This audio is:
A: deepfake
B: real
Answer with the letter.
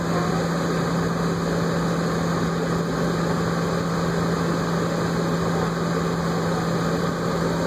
B